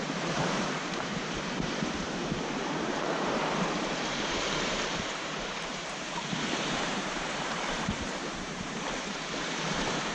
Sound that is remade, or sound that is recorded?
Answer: remade